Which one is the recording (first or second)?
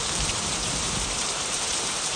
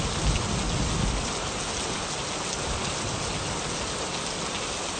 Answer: second